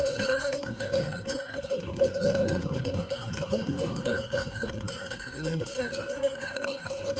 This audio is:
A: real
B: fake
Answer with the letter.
B